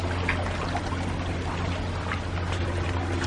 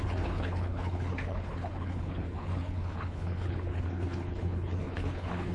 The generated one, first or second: second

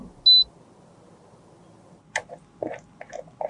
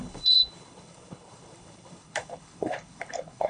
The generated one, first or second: second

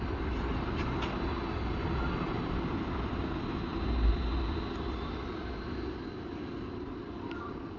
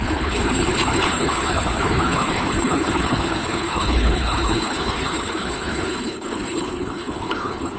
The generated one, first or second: second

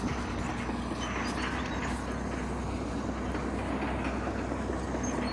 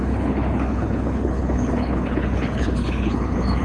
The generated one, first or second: second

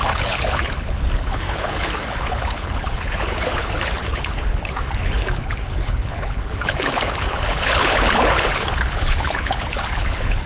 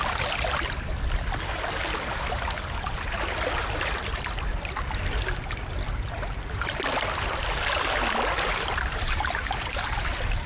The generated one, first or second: first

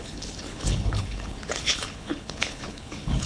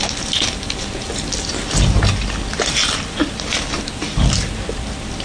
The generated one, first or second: first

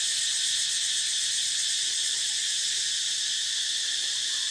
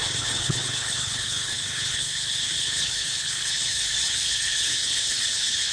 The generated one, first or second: second